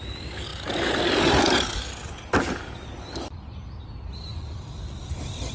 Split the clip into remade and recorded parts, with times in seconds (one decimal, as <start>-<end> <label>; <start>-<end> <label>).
0.0-5.5 recorded